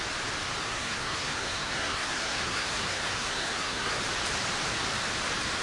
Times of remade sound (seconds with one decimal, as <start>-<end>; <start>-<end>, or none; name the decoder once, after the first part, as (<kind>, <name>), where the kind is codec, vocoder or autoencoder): 0.6-4.0 (codec, SNAC)